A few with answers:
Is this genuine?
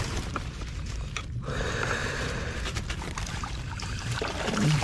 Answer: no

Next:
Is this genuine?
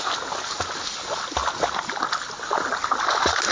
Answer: yes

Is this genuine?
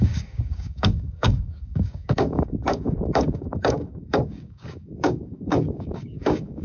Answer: no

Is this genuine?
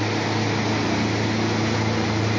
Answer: yes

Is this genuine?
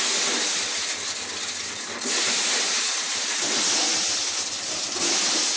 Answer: yes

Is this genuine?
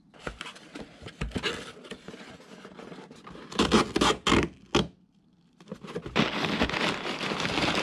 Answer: yes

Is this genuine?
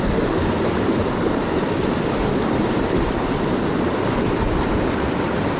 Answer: yes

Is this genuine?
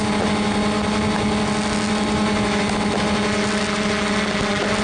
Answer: yes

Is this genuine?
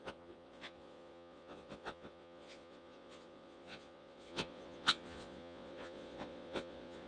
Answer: no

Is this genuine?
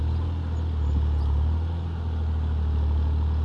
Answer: yes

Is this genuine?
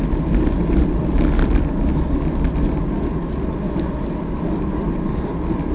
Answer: yes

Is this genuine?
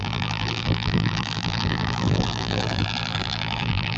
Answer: no